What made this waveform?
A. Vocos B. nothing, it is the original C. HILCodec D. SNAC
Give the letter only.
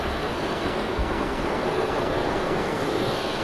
D